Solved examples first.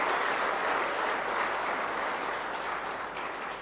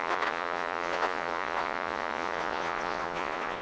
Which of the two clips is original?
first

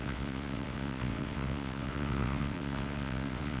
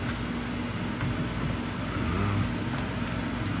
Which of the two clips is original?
second